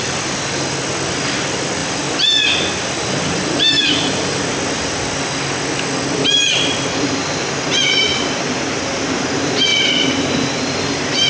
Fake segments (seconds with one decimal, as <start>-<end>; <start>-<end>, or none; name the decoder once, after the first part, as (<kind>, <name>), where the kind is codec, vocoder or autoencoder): 1.8-4.4 (vocoder, BigVGAN v2); 9.7-11.3